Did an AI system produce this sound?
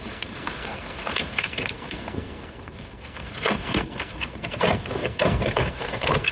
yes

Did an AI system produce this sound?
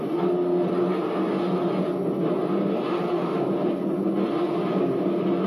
no